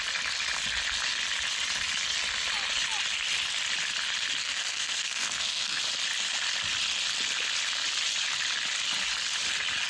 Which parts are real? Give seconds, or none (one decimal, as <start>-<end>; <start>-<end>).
0.0-4.4; 5.8-9.9